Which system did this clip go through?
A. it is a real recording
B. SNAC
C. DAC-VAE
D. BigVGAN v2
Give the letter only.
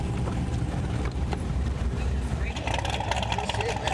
D